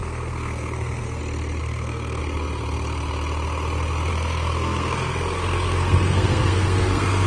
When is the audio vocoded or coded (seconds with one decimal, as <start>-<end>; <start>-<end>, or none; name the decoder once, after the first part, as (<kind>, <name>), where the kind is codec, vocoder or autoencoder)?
0.0-1.2 (codec, SNAC); 1.6-2.2; 4.1-7.3